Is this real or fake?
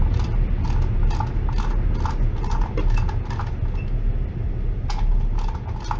real